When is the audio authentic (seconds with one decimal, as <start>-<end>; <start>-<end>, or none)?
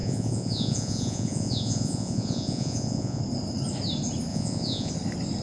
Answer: 3.2-4.3; 4.9-5.4